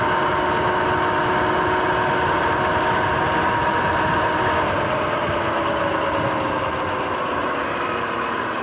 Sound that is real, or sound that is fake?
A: real